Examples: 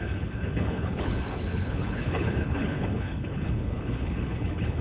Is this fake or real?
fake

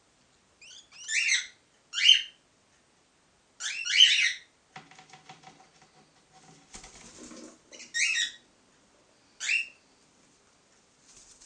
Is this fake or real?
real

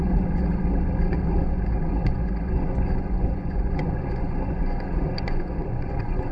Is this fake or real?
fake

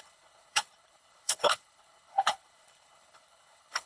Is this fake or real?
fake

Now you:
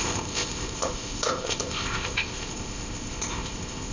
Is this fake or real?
fake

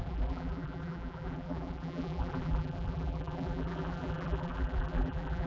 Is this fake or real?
fake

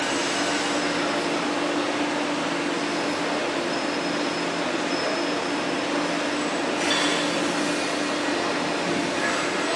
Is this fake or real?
real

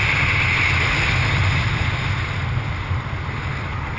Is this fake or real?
real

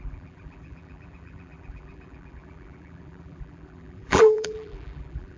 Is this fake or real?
fake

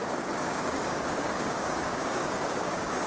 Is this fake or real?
fake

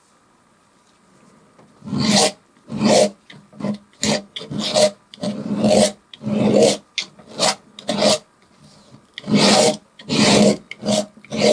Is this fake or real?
real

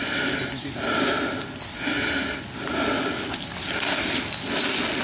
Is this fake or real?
real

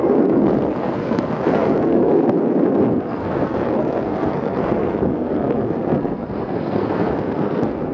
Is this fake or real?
fake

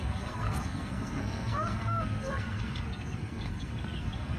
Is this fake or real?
fake